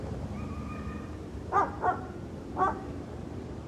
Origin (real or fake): fake